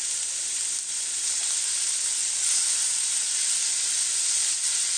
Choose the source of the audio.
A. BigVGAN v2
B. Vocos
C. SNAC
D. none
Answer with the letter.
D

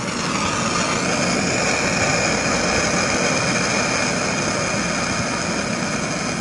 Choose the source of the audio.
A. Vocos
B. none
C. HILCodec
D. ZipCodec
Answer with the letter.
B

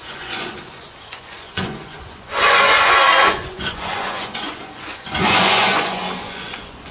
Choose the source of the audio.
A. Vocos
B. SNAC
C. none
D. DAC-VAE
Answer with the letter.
A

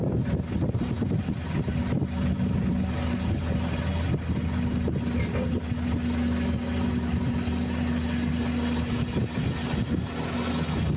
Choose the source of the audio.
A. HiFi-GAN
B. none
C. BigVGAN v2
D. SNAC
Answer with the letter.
B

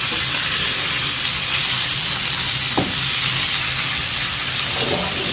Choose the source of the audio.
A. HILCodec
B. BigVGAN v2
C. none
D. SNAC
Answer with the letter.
C